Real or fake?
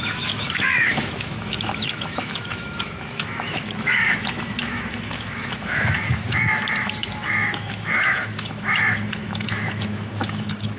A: fake